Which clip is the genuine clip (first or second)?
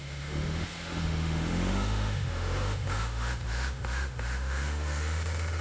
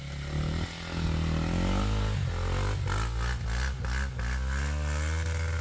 second